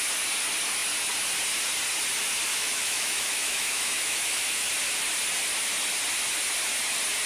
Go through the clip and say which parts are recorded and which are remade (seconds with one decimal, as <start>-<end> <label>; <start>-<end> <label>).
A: 0.0-2.5 recorded; 2.5-4.7 remade; 4.7-7.3 recorded